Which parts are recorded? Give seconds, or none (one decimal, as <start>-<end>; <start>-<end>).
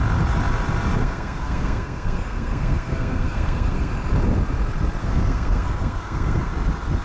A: 0.0-1.0; 3.9-5.0; 6.5-7.0